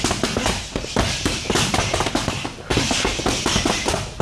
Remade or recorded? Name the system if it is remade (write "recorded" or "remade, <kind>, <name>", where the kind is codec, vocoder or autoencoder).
recorded